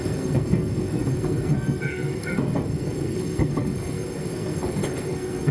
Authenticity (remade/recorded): remade